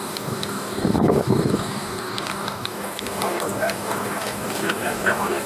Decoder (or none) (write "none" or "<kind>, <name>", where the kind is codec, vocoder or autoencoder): codec, DAC